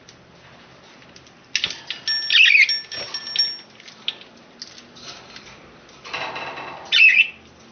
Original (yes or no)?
yes